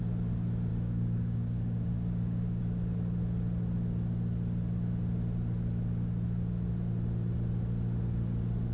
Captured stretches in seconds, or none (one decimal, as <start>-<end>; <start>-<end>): 0.0-0.7; 2.6-8.7